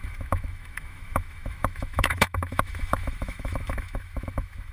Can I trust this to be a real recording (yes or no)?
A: no